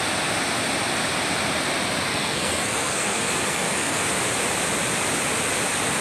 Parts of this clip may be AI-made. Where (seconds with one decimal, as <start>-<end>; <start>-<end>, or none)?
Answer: 2.1-4.1